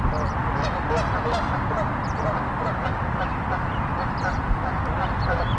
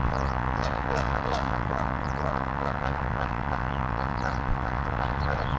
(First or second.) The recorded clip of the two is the first